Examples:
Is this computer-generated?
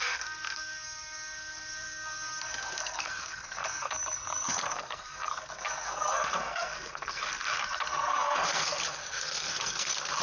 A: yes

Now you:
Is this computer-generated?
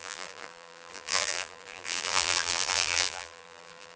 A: yes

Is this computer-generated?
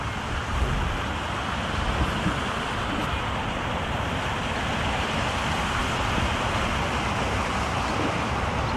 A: no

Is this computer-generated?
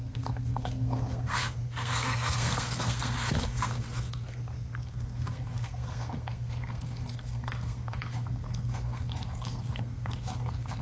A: yes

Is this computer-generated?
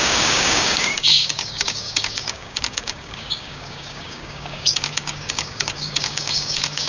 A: yes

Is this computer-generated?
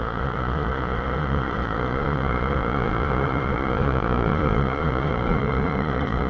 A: yes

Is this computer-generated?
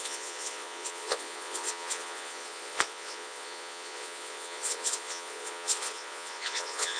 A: yes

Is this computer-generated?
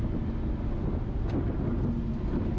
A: no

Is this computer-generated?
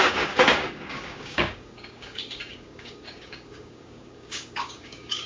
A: yes